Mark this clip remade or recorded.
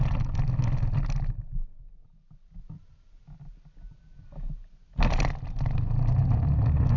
recorded